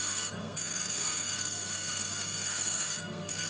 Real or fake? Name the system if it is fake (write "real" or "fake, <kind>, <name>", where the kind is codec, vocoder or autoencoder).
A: fake, codec, SNAC